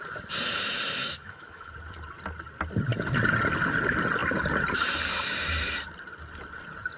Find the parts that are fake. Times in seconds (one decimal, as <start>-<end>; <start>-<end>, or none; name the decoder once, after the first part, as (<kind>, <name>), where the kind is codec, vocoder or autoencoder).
1.0-1.7 (autoencoder, DAC-VAE)